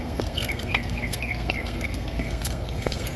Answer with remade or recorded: remade